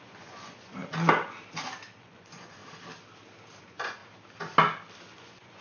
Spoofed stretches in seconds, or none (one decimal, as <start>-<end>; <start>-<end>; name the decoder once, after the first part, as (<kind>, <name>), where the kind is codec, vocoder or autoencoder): 0.0-0.8 (vocoder, Vocos); 2.0-2.6; 3.6-4.0; 5.1-5.6